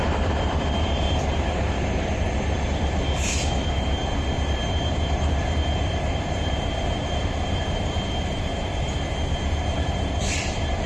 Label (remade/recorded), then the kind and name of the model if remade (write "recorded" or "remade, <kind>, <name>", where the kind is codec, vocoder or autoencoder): remade, vocoder, BigVGAN v2